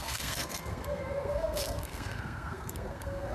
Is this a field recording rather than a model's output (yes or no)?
no